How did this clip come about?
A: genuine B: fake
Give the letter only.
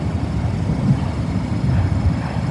A